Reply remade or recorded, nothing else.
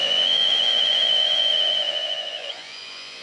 remade